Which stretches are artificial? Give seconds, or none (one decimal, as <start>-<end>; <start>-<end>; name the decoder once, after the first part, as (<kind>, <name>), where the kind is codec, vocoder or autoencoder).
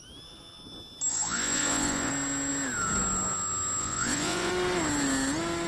1.1-2.1 (vocoder, Vocos); 3.8-4.5